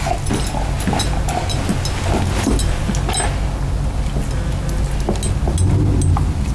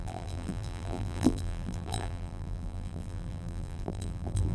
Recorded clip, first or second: first